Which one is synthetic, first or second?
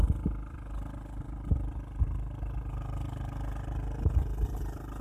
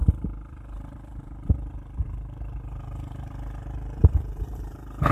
second